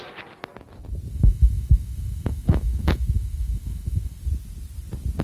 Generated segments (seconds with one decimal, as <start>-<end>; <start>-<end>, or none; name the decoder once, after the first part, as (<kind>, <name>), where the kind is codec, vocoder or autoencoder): 1.1-4.2 (autoencoder, DAC-VAE)